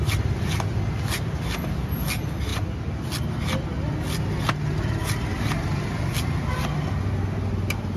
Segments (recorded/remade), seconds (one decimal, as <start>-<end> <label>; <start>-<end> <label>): 0.0-8.0 recorded